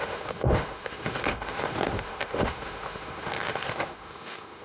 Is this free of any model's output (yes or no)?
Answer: no